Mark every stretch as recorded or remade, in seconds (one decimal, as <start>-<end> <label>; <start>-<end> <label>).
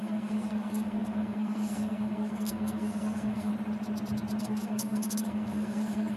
0.0-3.5 remade; 3.5-4.4 recorded; 4.4-6.2 remade